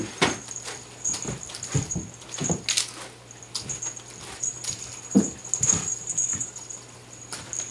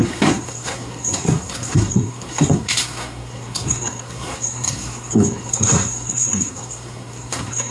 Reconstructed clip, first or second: second